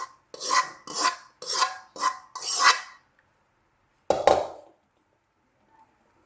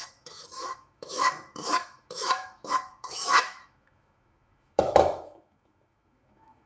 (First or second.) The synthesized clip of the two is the second